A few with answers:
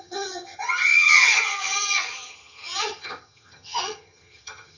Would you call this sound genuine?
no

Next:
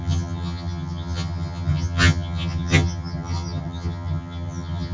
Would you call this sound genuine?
no